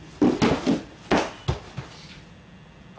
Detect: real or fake real